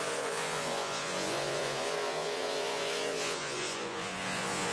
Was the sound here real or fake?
fake